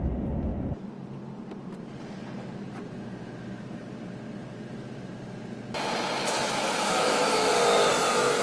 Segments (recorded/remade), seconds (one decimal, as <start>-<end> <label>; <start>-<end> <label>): 0.0-6.2 recorded; 6.2-7.9 remade; 7.9-8.4 recorded